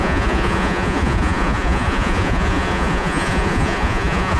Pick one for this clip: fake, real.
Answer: fake